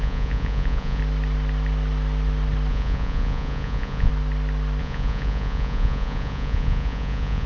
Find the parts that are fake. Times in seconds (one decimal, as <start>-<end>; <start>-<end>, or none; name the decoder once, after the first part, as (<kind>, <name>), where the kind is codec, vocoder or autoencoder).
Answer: 0.0-1.0 (vocoder, Vocos); 2.7-4.1; 4.8-7.5